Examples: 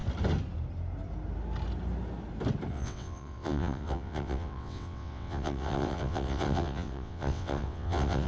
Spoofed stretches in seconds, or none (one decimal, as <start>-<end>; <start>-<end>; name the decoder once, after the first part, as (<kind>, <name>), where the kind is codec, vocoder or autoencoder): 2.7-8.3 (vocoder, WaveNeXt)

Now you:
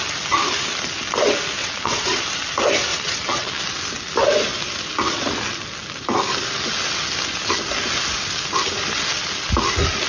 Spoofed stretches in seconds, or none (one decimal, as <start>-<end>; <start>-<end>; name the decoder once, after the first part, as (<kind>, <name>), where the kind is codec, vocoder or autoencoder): 1.6-2.2 (vocoder, WaveNeXt); 2.9-3.6

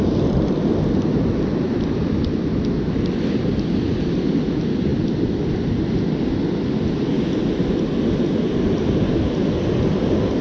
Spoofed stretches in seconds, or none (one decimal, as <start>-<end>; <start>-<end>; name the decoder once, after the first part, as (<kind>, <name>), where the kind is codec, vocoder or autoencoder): none

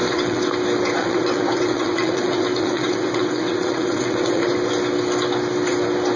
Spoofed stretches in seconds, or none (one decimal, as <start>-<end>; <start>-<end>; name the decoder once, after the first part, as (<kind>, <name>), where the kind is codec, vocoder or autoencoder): 0.0-0.5 (vocoder, WaveNeXt); 1.0-4.5

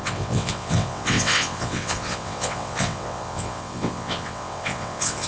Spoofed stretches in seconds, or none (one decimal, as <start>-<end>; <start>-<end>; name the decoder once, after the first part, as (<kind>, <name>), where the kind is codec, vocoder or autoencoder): 0.0-5.3 (vocoder, WaveNeXt)

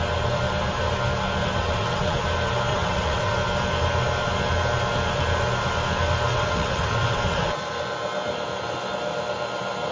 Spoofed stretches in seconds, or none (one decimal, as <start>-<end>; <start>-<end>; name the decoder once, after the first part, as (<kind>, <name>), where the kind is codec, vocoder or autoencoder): 1.6-2.2 (vocoder, WaveNeXt); 2.7-3.3; 6.3-7.5

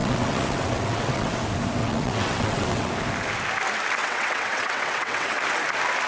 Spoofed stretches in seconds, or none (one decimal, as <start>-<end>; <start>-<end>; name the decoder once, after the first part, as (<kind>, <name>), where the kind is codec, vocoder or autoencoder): 0.0-1.4 (vocoder, WaveNeXt); 1.8-2.9; 4.0-5.4

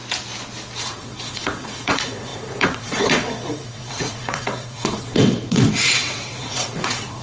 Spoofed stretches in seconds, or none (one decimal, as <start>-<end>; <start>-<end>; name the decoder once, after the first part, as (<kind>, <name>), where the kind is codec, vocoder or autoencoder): 0.8-7.2 (vocoder, WaveNeXt)